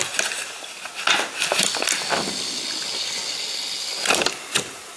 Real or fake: real